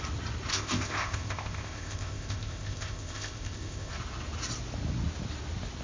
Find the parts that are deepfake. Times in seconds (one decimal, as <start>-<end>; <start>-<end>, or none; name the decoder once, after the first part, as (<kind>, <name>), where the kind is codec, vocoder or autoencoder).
0.5-3.9 (codec, ZipCodec)